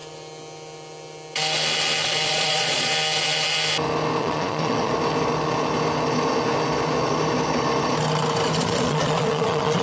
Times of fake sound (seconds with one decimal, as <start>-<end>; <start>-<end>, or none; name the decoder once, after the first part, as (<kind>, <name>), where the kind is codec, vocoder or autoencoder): 2.3-2.9 (vocoder, Vocos); 4.2-4.9; 8.6-9.8